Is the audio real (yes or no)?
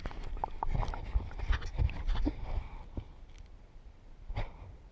yes